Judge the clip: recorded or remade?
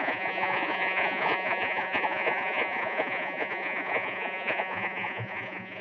remade